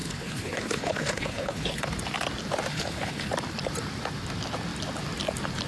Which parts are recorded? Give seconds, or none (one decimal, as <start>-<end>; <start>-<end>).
1.8-2.7; 3.3-5.7